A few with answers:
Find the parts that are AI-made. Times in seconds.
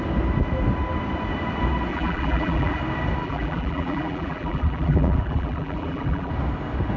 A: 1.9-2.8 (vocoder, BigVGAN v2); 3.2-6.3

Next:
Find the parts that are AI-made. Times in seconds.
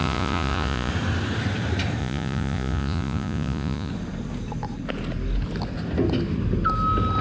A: 0.0-0.9 (vocoder, Vocos); 2.0-3.9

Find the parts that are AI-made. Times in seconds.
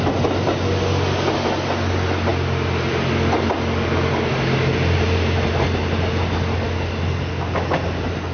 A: none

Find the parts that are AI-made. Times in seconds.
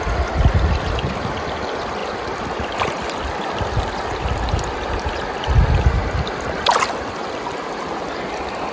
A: none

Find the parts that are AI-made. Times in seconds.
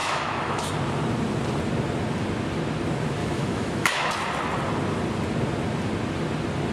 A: 0.0-0.7 (autoencoder, DAC-VAE); 3.2-4.1